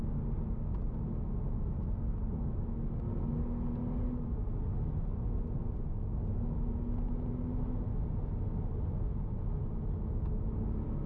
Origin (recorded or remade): recorded